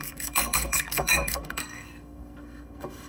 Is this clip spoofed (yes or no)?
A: yes